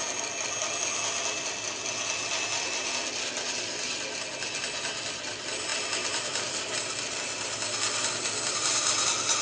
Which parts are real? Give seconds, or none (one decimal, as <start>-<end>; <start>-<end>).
0.0-9.4